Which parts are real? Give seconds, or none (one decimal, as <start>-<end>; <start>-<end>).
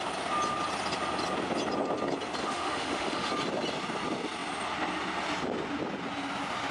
0.0-2.4; 3.3-6.7